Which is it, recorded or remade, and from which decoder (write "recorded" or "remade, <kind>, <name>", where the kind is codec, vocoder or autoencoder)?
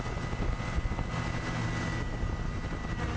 recorded